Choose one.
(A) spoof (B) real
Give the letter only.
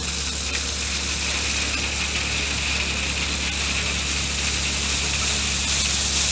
B